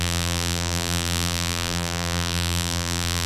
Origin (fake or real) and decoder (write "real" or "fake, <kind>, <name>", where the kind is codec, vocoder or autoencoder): fake, vocoder, BigVGAN v2